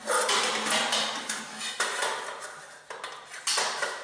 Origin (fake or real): real